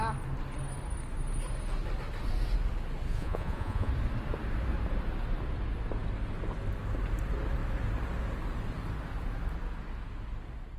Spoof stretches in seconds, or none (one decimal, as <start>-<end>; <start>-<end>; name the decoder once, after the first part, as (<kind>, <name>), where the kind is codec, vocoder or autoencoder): 3.1-3.9 (vocoder, Vocos)